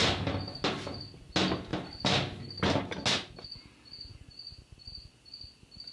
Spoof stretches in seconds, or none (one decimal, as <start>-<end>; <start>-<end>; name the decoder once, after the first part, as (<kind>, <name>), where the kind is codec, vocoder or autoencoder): none